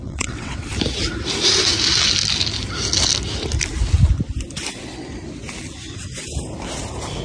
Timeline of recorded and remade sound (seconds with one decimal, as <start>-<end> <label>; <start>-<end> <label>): 0.0-0.6 remade; 0.6-7.2 recorded